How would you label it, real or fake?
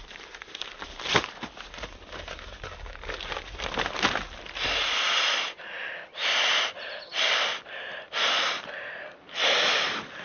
real